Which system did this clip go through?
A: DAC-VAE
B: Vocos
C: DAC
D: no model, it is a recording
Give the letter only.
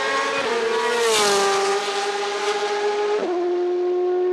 D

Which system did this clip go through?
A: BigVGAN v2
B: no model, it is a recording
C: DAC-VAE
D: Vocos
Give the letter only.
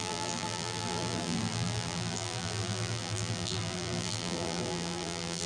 A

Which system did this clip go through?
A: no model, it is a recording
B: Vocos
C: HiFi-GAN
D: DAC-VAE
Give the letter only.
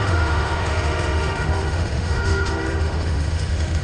D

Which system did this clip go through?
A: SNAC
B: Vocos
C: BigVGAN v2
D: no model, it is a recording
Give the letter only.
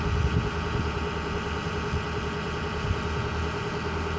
D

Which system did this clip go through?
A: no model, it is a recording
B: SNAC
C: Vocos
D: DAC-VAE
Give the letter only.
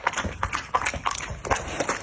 A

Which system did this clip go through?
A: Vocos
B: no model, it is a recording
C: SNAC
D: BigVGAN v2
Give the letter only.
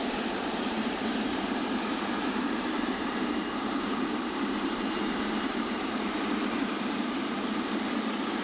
D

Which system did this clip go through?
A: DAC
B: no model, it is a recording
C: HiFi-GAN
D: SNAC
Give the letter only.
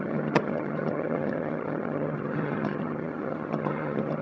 C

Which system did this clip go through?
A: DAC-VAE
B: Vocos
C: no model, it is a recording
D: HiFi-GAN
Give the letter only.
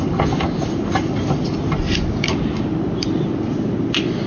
C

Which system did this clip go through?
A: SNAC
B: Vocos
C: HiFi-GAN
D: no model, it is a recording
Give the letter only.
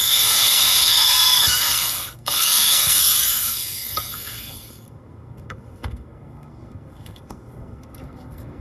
A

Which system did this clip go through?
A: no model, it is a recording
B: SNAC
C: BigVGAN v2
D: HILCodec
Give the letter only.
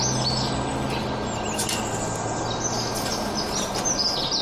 A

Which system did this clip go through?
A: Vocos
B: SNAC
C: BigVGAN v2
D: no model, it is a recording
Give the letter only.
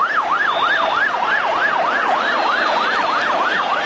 D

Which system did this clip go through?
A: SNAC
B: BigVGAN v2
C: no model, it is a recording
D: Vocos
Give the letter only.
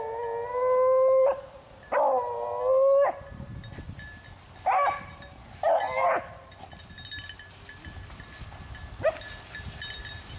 C